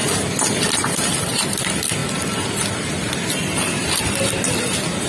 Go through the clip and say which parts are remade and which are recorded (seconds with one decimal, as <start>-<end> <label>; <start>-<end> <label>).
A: 0.0-5.1 recorded